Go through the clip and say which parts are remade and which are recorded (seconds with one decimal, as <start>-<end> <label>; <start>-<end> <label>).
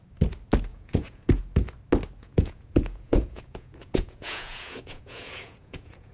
0.0-0.7 recorded; 0.7-1.4 remade; 1.4-2.2 recorded; 2.2-6.1 remade